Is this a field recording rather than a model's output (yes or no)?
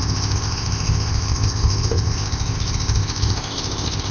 no